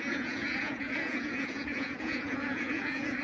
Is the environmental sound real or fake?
fake